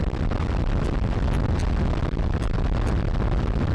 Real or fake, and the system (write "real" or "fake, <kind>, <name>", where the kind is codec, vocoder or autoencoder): real